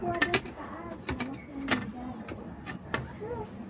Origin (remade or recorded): remade